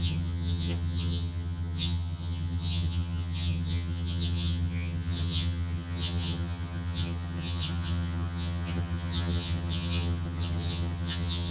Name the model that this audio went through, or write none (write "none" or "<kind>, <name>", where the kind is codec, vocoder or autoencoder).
vocoder, HiFi-GAN